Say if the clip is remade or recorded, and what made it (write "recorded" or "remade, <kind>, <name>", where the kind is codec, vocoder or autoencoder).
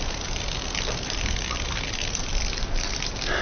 recorded